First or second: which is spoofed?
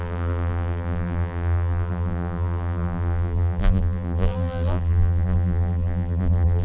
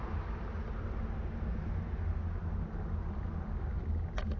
first